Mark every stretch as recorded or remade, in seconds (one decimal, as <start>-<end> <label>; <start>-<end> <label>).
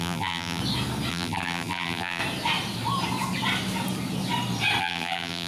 0.0-0.6 remade; 0.6-1.1 recorded; 1.1-2.2 remade; 2.2-4.8 recorded; 4.8-5.5 remade